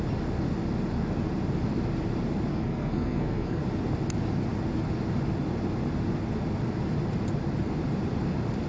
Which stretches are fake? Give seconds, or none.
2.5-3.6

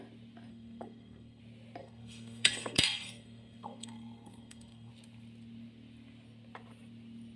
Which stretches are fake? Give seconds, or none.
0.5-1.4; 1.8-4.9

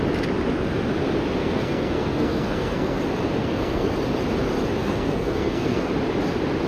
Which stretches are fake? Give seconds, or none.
1.4-3.0; 3.4-3.9; 4.8-5.9

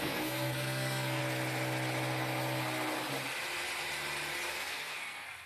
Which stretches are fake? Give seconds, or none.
0.0-1.2; 4.5-5.5

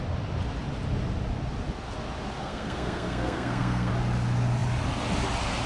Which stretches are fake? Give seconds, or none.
2.4-3.9

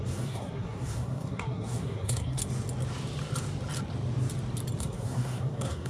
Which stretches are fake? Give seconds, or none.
0.0-2.4; 4.8-5.9